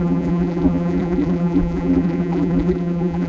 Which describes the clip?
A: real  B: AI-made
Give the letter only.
B